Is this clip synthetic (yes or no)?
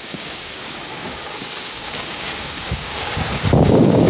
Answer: yes